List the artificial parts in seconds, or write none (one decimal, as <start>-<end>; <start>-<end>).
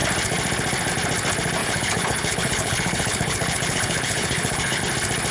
1.6-4.8